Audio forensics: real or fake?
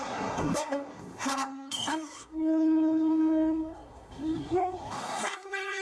fake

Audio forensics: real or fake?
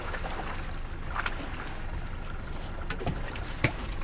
real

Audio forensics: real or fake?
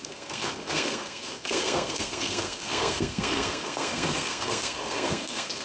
fake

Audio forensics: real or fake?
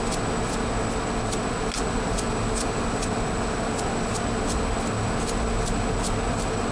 real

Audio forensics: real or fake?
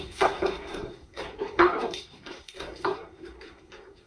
fake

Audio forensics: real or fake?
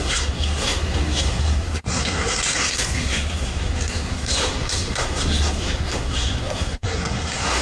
fake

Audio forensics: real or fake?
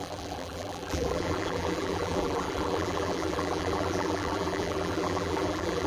fake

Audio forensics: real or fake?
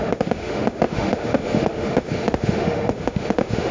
fake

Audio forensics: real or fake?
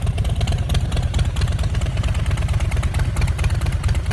fake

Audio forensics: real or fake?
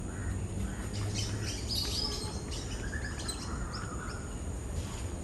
real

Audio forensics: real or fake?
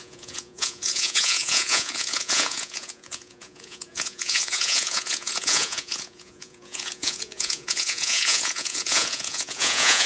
fake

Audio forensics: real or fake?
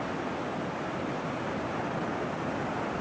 real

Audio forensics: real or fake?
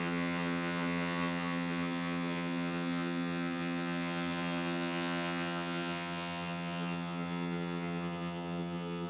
fake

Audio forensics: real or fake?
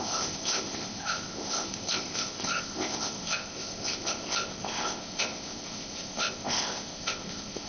fake